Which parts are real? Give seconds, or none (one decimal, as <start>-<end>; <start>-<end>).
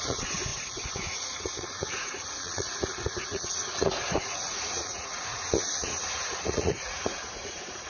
none